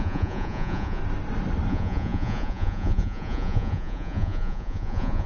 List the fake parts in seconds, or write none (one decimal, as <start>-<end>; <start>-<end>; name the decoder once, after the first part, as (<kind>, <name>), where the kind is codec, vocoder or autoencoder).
0.0-1.0 (vocoder, Vocos); 1.7-5.3